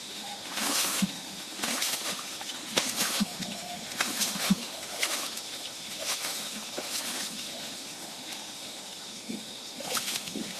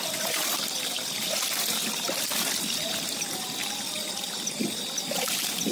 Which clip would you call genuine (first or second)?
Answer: second